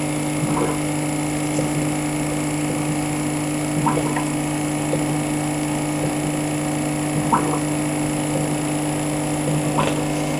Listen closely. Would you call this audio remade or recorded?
recorded